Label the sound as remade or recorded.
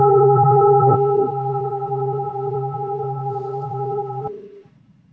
remade